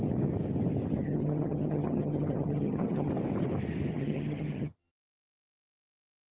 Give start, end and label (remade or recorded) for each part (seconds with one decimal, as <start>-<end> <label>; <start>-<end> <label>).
0.0-1.0 recorded; 1.0-3.1 remade; 3.1-3.9 recorded; 3.9-4.9 remade; 4.9-6.3 recorded

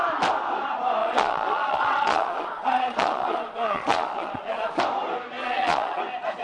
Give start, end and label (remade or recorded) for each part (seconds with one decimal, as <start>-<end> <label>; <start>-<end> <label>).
0.0-1.0 recorded; 1.0-4.8 remade; 4.8-5.4 recorded; 5.4-6.0 remade; 6.0-6.4 recorded

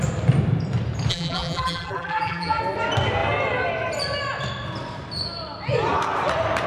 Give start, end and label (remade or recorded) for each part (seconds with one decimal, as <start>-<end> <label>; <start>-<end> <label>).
0.0-1.1 recorded; 1.1-2.6 remade; 2.6-6.7 recorded

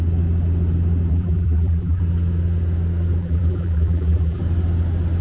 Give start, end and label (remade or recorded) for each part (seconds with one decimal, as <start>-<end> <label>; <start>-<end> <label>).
0.0-1.1 recorded; 1.1-2.0 remade; 2.0-3.2 recorded; 3.2-4.4 remade; 4.4-5.2 recorded

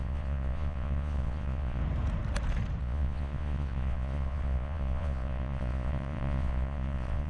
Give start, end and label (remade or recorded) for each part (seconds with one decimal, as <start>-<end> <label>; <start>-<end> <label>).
0.0-1.8 remade; 1.8-2.8 recorded; 2.8-7.3 remade